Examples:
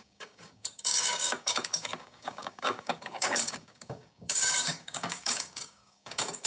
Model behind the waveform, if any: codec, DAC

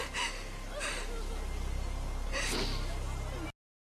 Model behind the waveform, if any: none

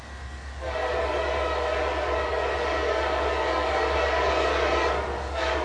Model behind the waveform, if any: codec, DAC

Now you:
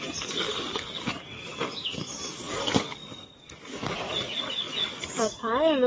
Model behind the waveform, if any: codec, DAC